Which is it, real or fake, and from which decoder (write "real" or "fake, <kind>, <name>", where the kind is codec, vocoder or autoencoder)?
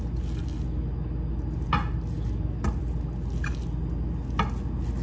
real